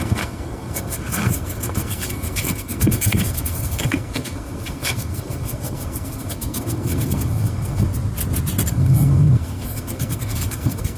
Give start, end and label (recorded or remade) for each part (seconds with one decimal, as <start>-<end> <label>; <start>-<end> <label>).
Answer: 0.0-7.9 remade; 7.9-8.7 recorded; 8.7-11.0 remade